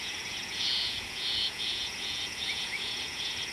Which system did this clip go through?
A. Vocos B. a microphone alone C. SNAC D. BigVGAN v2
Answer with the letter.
A